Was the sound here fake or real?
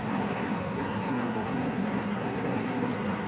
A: fake